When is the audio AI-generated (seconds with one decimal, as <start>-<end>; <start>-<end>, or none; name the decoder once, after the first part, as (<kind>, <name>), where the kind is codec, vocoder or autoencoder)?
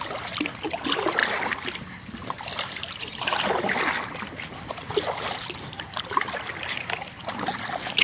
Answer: none